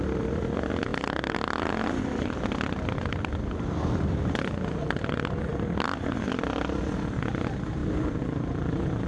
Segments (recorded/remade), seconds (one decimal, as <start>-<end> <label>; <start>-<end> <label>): 0.0-9.1 recorded